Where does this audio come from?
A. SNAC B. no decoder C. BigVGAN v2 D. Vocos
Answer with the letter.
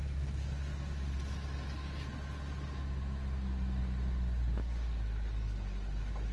B